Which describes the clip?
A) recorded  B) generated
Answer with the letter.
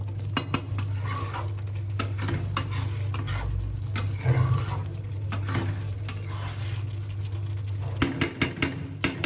A